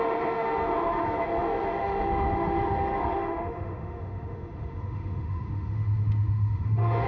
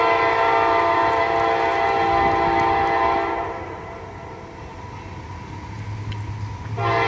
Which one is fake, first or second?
first